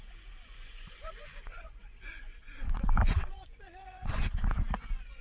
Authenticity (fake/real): fake